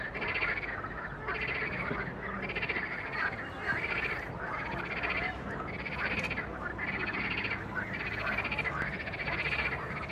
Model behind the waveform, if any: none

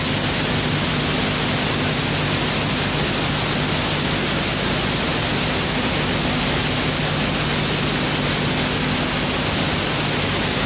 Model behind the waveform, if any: none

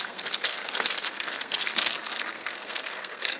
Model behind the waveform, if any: codec, SNAC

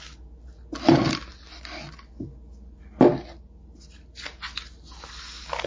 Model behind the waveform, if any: none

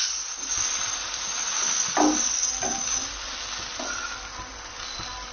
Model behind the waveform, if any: none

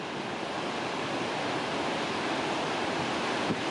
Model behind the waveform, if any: none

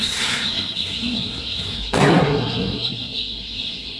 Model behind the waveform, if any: codec, SNAC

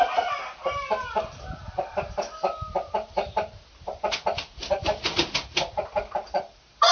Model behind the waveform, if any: none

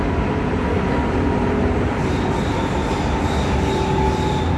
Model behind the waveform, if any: none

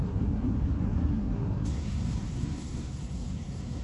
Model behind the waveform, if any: codec, SNAC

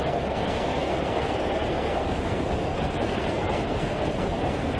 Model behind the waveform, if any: codec, SNAC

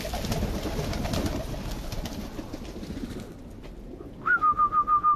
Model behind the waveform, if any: none